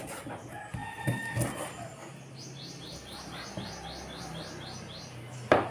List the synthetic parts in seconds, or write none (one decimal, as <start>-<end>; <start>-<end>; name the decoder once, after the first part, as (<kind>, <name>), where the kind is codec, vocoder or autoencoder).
none